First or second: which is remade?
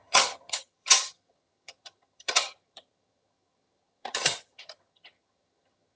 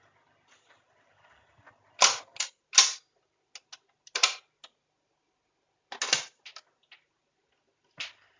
first